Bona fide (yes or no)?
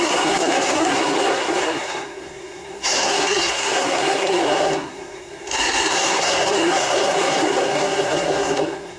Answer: no